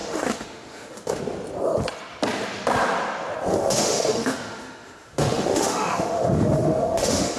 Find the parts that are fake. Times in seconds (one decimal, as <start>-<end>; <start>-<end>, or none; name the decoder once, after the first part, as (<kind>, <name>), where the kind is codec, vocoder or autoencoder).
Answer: 0.0-1.2 (autoencoder, DAC-VAE); 3.5-7.4